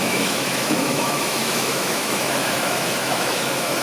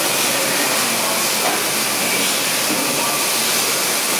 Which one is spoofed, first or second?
first